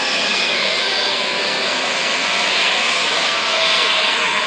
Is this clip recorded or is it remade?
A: remade